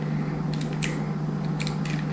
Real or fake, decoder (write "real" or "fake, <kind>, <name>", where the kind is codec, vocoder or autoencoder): real